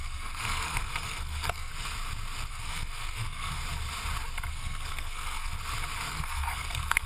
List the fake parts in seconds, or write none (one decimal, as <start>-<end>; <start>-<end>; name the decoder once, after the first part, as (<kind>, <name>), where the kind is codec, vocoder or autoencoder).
0.0-1.7 (codec, SNAC); 2.5-3.6; 4.5-5.5; 6.1-7.1